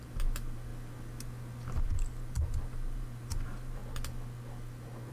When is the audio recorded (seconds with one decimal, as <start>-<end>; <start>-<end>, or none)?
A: 0.7-1.8; 3.8-5.1